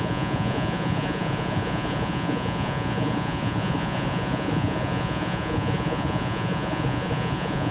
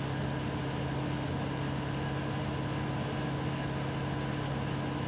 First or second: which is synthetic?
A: first